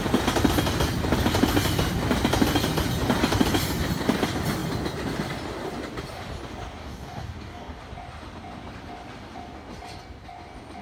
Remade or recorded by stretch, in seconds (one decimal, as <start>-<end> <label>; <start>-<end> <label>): 0.0-6.8 recorded; 6.8-7.8 remade; 7.8-10.8 recorded